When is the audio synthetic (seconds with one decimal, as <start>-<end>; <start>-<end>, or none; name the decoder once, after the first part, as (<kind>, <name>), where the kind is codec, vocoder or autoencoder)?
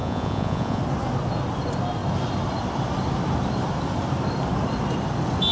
0.0-0.8 (vocoder, Vocos)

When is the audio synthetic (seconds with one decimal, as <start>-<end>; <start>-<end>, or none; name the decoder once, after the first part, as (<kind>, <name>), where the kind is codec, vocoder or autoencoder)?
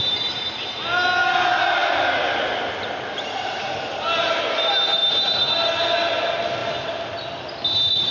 none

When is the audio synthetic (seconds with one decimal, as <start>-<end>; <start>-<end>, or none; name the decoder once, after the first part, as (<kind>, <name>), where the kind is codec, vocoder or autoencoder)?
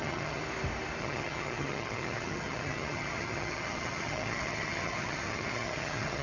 0.0-0.4 (vocoder, HiFi-GAN); 1.0-6.2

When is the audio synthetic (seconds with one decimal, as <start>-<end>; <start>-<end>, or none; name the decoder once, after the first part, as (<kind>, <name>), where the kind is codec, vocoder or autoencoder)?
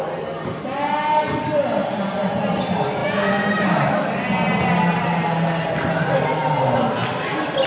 none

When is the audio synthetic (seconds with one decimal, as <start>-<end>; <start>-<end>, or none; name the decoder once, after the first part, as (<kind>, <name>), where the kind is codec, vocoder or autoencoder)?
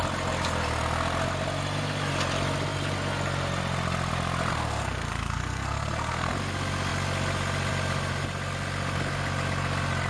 4.5-6.3 (codec, SNAC)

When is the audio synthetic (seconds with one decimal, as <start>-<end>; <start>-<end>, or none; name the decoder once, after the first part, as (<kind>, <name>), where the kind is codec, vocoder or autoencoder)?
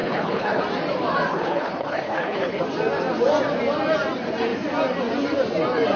0.0-0.6 (codec, HILCodec); 1.3-2.6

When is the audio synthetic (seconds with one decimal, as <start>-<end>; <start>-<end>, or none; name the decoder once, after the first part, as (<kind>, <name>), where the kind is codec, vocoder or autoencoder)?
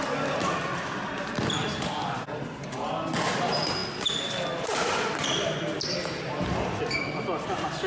none